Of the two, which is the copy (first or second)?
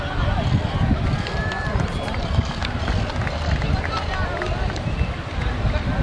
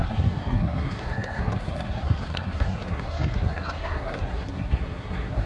second